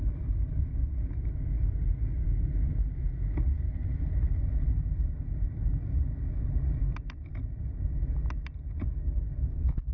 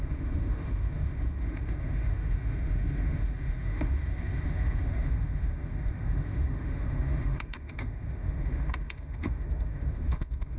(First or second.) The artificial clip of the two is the second